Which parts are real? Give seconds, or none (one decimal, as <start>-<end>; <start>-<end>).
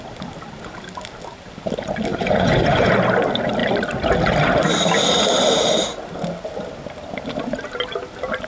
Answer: 0.0-2.1; 2.9-8.5